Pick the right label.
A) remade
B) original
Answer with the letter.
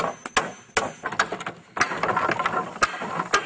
B